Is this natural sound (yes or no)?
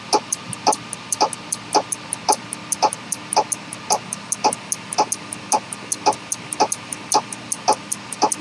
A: yes